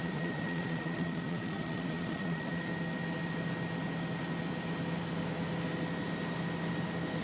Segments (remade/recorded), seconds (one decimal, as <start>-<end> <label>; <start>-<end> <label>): 0.0-2.7 remade; 2.7-7.2 recorded